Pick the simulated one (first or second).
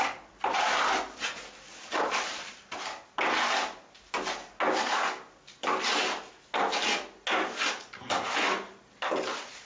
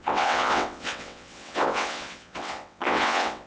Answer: second